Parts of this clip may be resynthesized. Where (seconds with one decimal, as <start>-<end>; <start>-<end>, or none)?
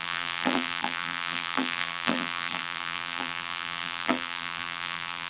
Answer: 0.0-5.3